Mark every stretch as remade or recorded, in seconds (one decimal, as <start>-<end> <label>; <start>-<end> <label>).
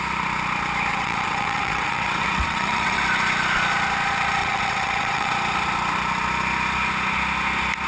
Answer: 0.0-0.9 recorded; 0.9-3.0 remade; 3.0-4.4 recorded; 4.4-5.3 remade; 5.3-7.9 recorded